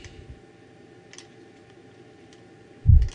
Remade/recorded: remade